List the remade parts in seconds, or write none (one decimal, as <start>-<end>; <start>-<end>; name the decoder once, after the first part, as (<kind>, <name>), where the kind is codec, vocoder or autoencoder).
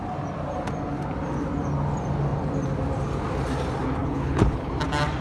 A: 4.0-4.7 (codec, HILCodec)